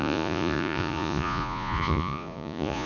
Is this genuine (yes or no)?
no